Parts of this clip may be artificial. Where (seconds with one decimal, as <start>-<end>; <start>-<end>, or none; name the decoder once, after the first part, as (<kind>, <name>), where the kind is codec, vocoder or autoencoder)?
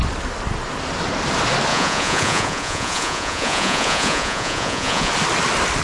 1.7-5.1 (vocoder, Vocos)